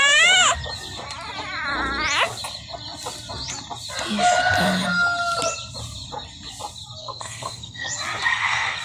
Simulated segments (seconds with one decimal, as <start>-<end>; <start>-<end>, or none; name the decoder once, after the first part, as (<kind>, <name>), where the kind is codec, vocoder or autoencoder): 7.0-7.9 (codec, SNAC); 8.3-8.8